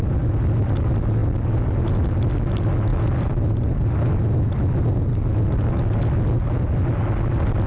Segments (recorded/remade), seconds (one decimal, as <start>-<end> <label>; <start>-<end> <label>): 0.0-7.7 recorded